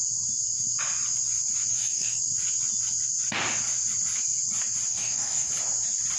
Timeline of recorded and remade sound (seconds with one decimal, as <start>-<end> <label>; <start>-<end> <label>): 0.0-1.7 recorded; 1.7-2.2 remade; 2.2-4.9 recorded; 4.9-5.5 remade; 5.5-6.2 recorded